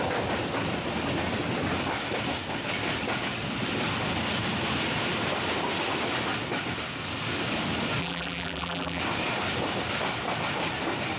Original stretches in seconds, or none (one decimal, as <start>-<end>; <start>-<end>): 0.0-8.0; 9.0-11.2